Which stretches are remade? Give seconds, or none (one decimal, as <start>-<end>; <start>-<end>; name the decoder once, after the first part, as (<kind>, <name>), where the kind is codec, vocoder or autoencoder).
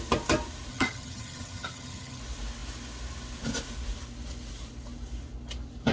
0.7-2.2 (vocoder, HiFi-GAN)